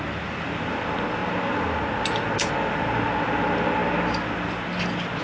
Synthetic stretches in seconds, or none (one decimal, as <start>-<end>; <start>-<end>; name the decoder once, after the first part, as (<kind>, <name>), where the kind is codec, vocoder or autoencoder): none